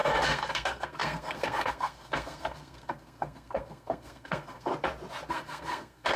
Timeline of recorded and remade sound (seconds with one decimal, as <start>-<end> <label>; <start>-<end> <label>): 0.0-4.7 remade; 4.7-5.3 recorded; 5.3-6.2 remade